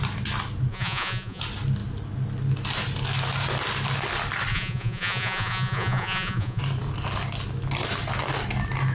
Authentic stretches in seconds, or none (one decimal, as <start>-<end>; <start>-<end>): 0.0-0.7; 1.4-4.5; 6.6-8.9